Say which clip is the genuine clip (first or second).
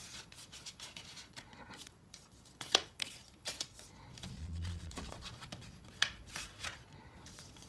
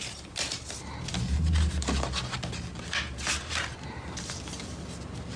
second